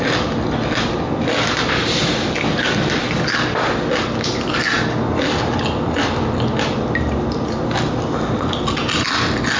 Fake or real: real